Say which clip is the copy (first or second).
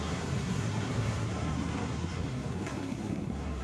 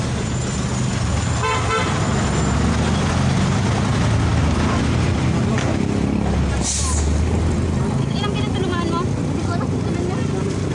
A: first